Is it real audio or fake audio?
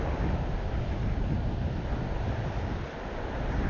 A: real